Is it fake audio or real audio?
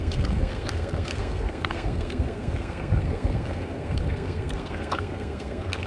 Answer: fake